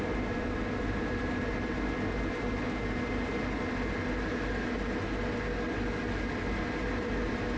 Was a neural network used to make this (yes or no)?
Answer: no